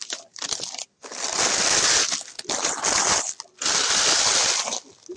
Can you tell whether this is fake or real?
fake